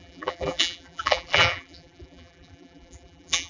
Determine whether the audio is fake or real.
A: fake